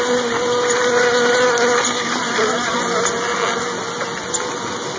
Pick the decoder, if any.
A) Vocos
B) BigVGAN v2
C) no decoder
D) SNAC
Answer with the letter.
C